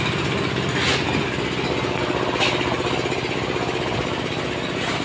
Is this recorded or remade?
recorded